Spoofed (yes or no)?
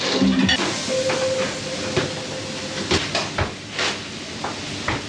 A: no